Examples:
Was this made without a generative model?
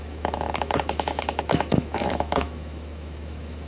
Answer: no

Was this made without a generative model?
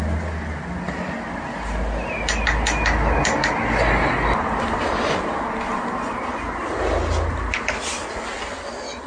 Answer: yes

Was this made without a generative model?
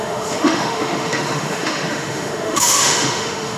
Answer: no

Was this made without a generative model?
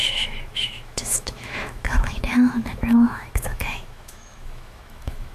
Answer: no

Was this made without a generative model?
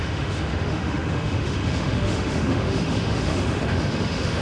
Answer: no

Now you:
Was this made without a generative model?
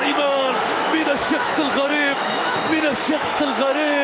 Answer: no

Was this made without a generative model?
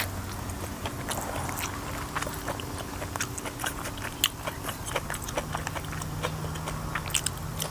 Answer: yes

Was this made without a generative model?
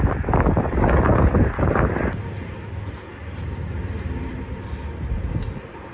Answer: yes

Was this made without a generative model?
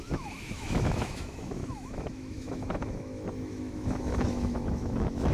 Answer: no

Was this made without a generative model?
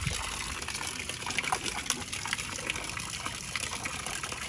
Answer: yes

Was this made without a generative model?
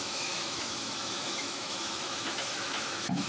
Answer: no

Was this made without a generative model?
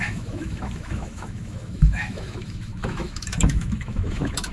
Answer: no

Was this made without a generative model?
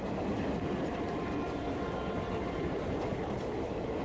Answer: yes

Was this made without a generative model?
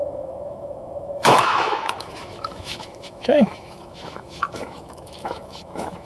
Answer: no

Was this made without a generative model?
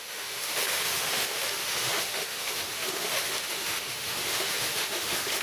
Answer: no